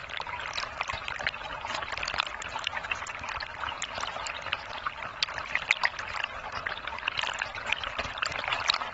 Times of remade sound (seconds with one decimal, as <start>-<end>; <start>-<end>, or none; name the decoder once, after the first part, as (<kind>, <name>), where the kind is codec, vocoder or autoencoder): 0.0-3.4 (vocoder, BigVGAN v2); 4.1-8.9